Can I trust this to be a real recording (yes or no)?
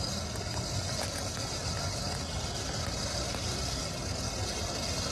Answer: yes